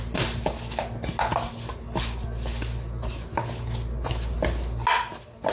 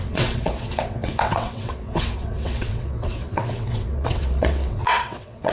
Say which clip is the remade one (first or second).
second